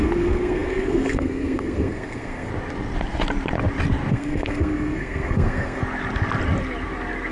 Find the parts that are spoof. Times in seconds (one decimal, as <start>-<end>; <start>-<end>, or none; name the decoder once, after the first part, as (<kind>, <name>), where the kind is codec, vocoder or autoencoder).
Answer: 0.0-2.5 (codec, SNAC); 4.1-5.8